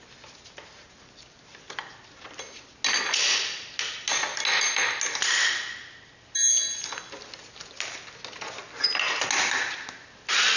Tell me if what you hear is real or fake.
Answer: real